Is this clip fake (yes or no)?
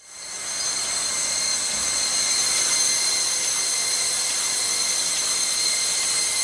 no